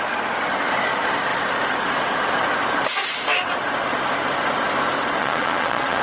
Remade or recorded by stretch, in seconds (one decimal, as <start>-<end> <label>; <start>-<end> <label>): 0.0-5.2 recorded; 5.2-6.0 remade